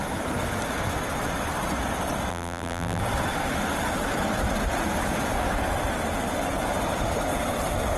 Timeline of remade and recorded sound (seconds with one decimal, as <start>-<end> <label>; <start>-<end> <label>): 0.0-2.3 recorded; 2.3-3.0 remade; 3.0-8.0 recorded